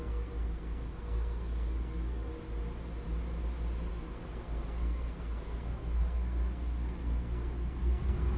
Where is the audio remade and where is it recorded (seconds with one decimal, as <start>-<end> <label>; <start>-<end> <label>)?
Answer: 0.0-2.3 remade; 2.3-3.9 recorded; 3.9-8.4 remade